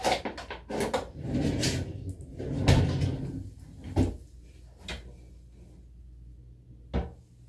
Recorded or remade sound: recorded